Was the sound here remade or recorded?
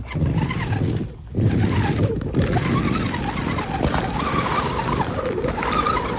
recorded